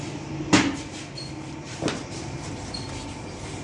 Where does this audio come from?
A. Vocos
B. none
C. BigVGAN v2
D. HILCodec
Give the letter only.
B